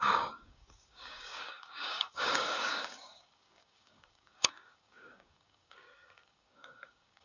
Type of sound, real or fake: fake